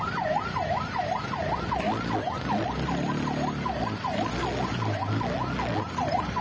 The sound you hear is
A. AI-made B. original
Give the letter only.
B